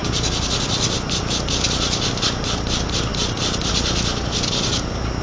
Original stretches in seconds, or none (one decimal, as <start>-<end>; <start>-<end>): 0.0-5.2